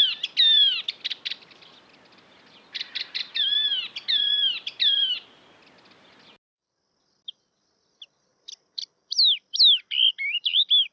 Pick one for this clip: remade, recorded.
recorded